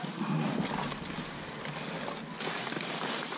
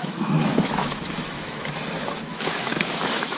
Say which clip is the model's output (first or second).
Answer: second